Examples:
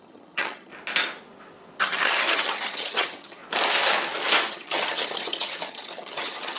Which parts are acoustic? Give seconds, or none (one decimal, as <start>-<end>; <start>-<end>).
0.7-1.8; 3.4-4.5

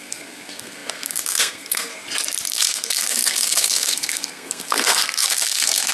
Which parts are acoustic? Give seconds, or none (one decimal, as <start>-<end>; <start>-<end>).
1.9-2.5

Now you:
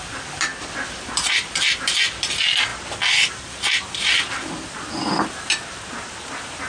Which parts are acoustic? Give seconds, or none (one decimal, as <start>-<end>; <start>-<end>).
0.0-6.7

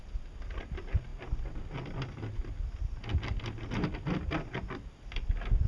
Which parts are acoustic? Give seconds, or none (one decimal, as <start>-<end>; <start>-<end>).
0.0-5.7

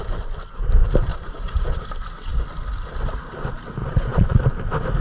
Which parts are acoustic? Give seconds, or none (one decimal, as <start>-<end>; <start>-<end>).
0.0-1.1; 1.8-3.8; 4.4-5.0